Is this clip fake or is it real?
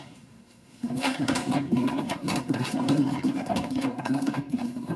fake